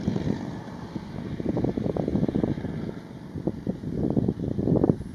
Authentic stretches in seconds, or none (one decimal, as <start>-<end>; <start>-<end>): 0.0-5.1